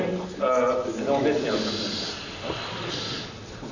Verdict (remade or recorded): recorded